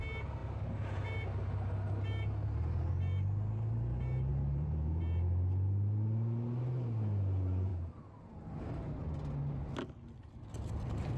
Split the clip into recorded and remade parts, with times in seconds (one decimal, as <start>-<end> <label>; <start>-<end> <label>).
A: 0.0-4.3 recorded; 4.3-5.0 remade; 5.0-7.7 recorded; 7.7-9.0 remade; 9.0-11.2 recorded